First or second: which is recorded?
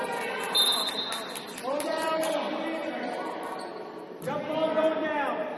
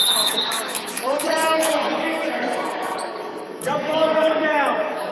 first